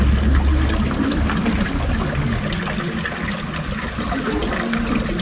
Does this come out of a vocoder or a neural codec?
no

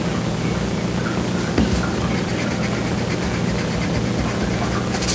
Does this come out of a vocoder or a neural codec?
no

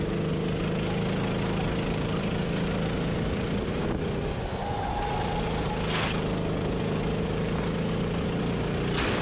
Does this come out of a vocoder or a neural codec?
no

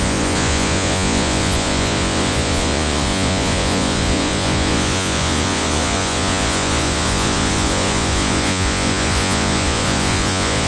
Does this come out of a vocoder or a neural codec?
yes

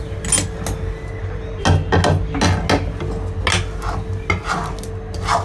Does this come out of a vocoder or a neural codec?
no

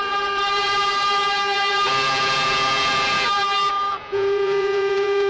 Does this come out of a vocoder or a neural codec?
yes